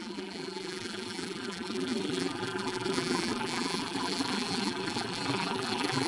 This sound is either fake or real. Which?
fake